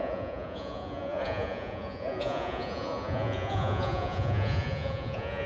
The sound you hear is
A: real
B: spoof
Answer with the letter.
B